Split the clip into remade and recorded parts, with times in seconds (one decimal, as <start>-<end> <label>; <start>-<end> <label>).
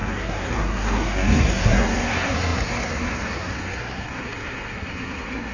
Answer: 0.0-5.5 remade